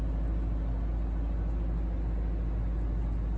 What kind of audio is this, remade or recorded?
recorded